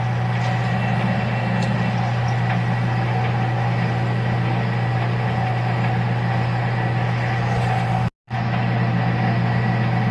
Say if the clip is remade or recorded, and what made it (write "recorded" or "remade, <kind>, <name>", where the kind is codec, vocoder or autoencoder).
recorded